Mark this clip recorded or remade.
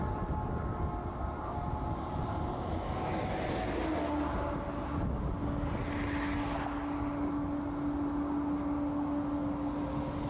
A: recorded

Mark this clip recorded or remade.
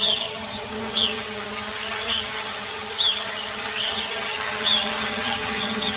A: remade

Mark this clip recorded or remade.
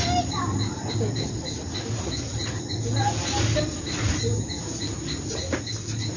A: recorded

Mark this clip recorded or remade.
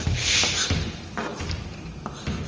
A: recorded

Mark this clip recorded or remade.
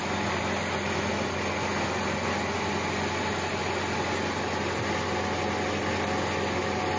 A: recorded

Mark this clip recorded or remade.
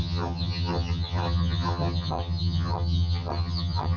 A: remade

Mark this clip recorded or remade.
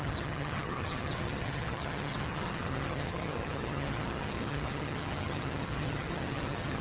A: remade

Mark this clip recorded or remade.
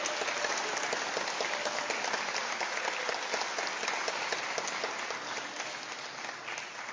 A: recorded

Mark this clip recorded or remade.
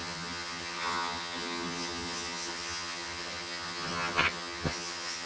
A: remade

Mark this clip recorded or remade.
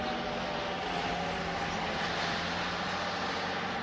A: recorded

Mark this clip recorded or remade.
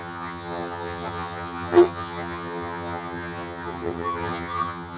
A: remade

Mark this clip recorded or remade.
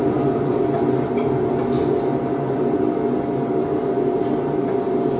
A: recorded